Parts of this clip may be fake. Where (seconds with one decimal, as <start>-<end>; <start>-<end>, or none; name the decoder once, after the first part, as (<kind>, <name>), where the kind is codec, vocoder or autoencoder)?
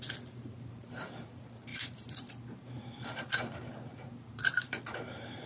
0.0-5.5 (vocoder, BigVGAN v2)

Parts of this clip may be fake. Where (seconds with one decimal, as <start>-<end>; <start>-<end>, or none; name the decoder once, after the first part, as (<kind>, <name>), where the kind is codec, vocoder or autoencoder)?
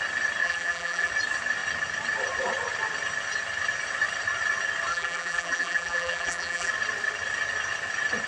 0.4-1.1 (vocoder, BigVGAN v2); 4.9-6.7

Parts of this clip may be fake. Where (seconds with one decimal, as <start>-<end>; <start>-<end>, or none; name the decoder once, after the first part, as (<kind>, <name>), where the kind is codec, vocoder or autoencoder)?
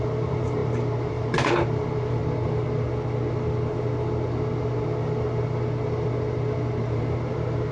0.0-2.2 (vocoder, BigVGAN v2); 6.8-7.7